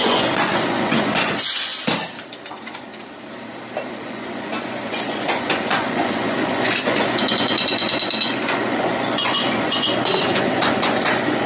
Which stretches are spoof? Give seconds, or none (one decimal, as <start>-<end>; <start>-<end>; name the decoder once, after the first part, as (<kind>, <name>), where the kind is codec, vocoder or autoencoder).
0.0-1.7 (vocoder, Vocos); 2.5-2.9; 3.9-11.5